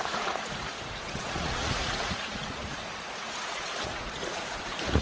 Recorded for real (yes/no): no